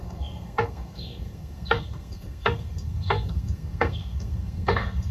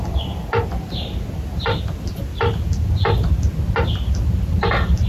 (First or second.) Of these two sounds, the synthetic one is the first